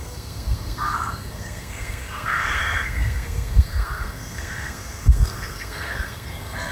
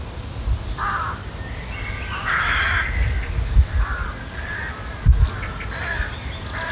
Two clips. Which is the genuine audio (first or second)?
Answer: second